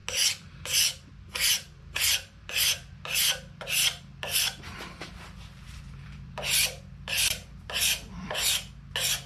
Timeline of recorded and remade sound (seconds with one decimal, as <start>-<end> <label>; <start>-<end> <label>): 0.0-0.5 recorded; 0.5-8.5 remade; 8.5-9.3 recorded